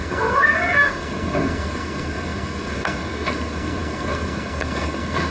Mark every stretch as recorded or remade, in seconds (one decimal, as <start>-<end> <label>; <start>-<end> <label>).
0.0-5.3 remade